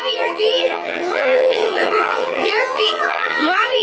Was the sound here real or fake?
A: fake